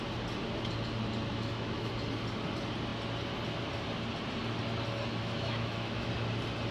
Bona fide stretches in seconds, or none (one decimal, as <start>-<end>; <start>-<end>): 0.0-1.3; 1.9-5.2; 6.1-6.7